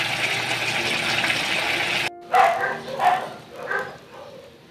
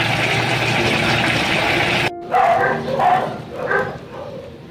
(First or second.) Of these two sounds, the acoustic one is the first